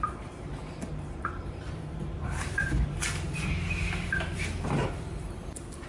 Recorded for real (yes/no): no